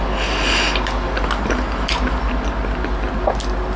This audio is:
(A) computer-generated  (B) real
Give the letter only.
B